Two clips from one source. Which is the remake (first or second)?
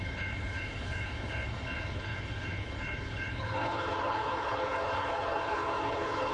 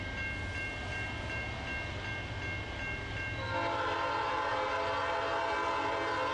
first